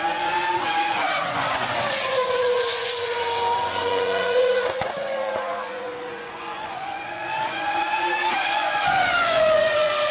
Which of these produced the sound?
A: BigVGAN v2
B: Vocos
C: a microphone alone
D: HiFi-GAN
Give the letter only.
B